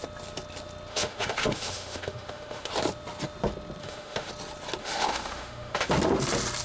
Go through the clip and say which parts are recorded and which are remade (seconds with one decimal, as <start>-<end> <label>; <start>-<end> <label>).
0.0-0.9 recorded; 0.9-2.7 remade; 2.7-3.8 recorded; 3.8-4.3 remade; 4.3-4.8 recorded; 4.8-5.9 remade; 5.9-6.6 recorded